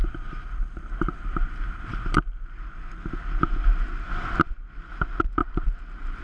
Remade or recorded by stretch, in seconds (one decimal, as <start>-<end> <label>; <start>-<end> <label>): 0.0-1.9 remade; 1.9-4.9 recorded; 4.9-6.2 remade